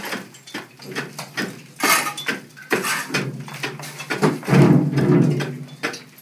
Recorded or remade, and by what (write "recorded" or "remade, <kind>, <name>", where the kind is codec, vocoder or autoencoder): recorded